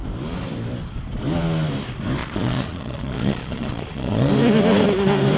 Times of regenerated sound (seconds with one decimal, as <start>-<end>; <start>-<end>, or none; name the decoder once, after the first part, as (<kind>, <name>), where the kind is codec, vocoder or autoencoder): 2.2-4.3 (vocoder, Vocos)